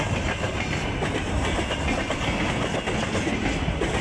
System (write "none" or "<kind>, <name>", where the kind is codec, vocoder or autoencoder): none